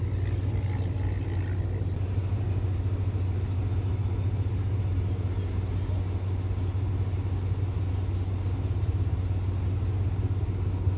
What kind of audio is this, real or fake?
real